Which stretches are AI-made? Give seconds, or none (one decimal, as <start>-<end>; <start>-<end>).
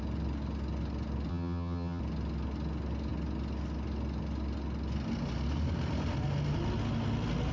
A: 1.3-2.0